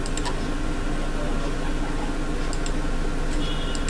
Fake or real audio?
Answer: real